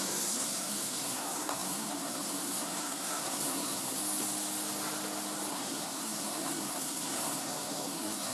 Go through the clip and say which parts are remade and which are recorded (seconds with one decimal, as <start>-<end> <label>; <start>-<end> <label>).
0.0-4.0 remade; 4.0-5.5 recorded; 5.5-8.3 remade

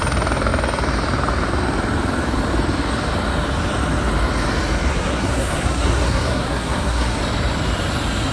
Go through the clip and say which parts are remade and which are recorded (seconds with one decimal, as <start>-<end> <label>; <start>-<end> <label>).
0.0-4.9 recorded; 4.9-7.2 remade; 7.2-8.3 recorded

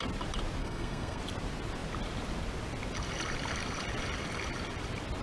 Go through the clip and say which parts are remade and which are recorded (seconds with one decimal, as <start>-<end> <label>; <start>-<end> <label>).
0.0-0.6 recorded; 0.6-1.2 remade; 1.2-5.2 recorded

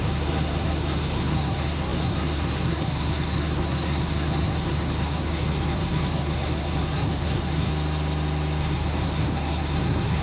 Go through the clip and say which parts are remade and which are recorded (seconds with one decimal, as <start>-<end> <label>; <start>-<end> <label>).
0.0-7.7 remade; 7.7-8.6 recorded; 8.6-10.2 remade

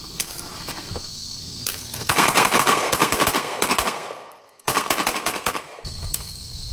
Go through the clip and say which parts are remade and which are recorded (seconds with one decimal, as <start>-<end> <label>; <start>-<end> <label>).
0.0-6.7 remade

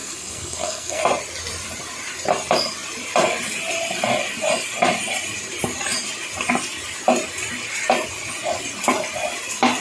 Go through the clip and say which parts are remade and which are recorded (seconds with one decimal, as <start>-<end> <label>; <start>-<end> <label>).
0.0-1.0 remade; 1.0-9.8 recorded

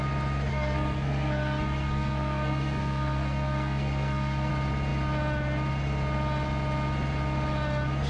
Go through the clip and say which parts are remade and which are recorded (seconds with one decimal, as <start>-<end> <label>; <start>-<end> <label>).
0.0-0.5 recorded; 0.5-4.5 remade; 4.5-8.1 recorded